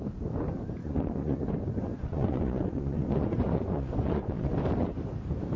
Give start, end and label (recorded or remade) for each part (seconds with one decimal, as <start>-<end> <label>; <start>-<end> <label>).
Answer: 0.0-0.8 recorded; 0.8-1.5 remade; 1.5-2.1 recorded; 2.1-4.5 remade; 4.5-5.6 recorded